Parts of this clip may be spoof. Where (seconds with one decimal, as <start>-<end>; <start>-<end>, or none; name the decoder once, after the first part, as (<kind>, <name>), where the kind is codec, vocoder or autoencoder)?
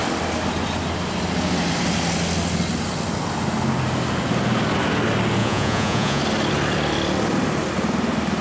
5.4-6.2 (vocoder, Vocos)